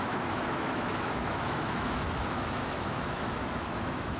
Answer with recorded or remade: remade